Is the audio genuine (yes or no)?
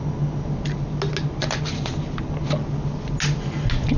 yes